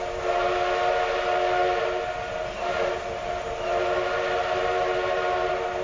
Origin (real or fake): real